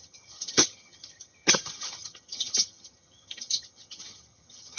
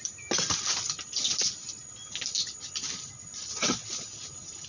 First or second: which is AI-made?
first